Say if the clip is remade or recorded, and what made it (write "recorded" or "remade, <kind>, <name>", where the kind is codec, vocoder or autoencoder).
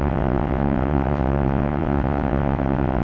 remade, vocoder, WaveNeXt